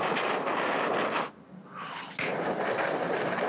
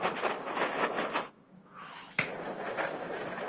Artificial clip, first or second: second